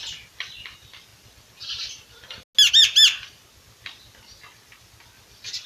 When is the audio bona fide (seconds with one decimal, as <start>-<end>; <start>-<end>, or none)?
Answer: 0.0-5.7